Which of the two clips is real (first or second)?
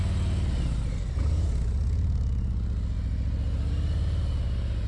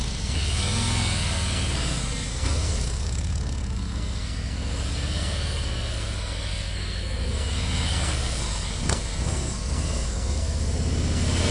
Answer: first